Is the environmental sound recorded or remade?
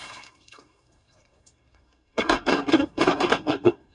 remade